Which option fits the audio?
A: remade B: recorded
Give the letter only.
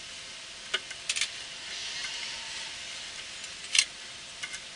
B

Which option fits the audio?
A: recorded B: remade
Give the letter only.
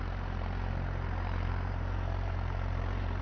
B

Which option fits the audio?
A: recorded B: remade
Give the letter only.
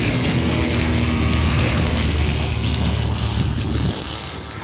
B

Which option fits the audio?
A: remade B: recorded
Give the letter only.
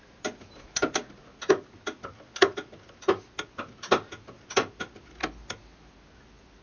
B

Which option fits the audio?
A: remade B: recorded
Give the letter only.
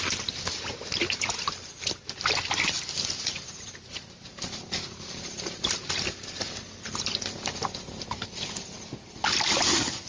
B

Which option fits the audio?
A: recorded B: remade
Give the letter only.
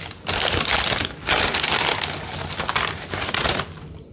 A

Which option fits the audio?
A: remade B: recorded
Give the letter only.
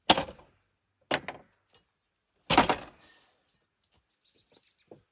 B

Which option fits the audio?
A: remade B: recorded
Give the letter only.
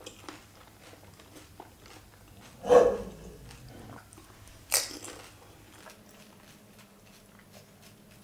B